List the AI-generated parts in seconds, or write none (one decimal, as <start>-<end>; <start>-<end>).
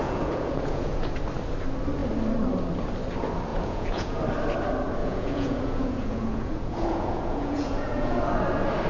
0.0-1.2; 3.5-4.2; 5.0-8.2